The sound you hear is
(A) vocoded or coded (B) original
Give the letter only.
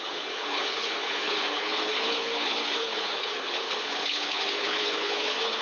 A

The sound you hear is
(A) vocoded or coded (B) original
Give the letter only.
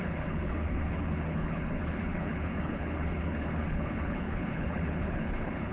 A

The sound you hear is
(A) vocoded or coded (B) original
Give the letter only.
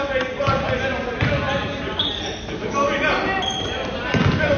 B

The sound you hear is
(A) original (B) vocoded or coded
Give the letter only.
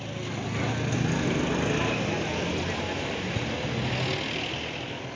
A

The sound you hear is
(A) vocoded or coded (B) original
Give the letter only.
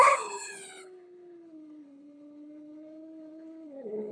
A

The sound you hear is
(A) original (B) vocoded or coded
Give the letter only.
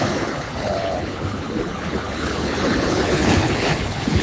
B